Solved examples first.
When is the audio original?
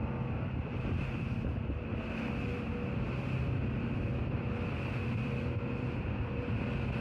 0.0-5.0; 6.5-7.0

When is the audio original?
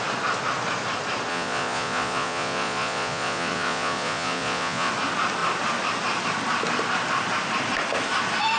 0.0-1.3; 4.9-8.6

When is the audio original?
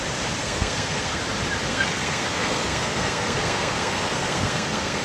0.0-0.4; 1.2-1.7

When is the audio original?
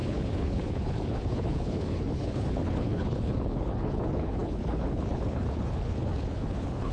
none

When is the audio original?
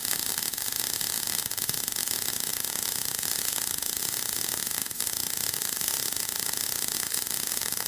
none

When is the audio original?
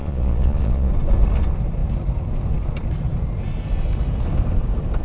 0.9-5.0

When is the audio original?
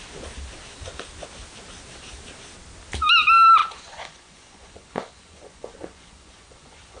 0.0-3.6